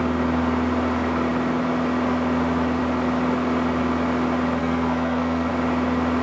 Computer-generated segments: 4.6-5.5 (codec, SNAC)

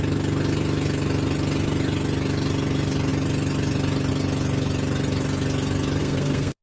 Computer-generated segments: 6.0-6.6 (codec, SNAC)

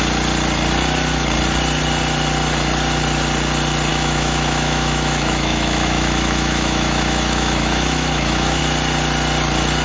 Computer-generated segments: 3.9-8.6 (autoencoder, DAC-VAE)

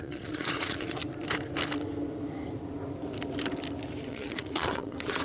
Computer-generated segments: 0.0-1.0 (vocoder, Vocos); 4.1-5.2

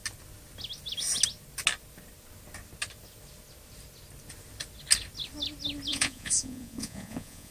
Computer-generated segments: 5.9-7.5 (vocoder, Vocos)

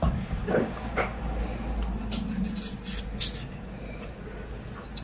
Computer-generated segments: 0.0-1.2 (codec, DAC)

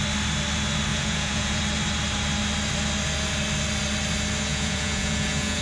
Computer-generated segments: 0.9-1.6 (vocoder, Vocos); 4.5-5.6

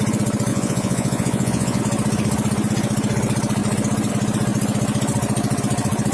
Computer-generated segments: 0.5-1.8 (vocoder, Vocos)